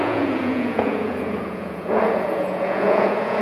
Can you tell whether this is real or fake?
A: fake